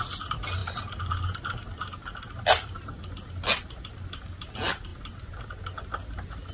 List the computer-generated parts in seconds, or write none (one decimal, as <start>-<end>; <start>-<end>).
none